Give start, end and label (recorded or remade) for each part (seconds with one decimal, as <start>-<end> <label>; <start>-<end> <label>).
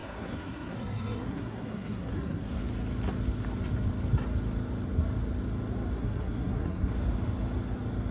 0.0-2.6 remade; 2.6-6.0 recorded; 6.0-6.9 remade; 6.9-8.1 recorded